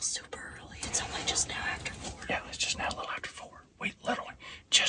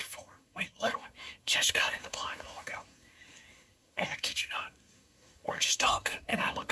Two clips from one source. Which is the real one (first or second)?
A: first